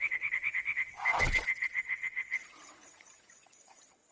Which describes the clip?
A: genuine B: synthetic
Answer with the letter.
B